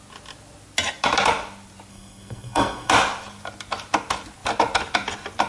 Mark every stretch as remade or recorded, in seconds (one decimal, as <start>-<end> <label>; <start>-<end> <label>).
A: 0.0-1.9 recorded; 1.9-2.9 remade; 2.9-5.5 recorded